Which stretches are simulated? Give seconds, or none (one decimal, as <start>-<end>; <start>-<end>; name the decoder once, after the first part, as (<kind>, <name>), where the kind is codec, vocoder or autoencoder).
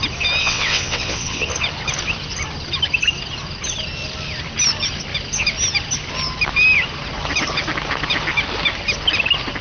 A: 0.4-1.5 (vocoder, WaveNeXt)